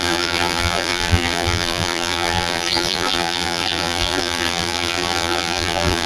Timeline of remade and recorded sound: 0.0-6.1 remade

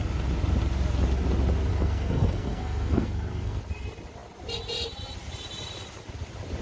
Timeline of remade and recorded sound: 0.0-1.7 recorded; 1.7-3.6 remade; 3.6-6.6 recorded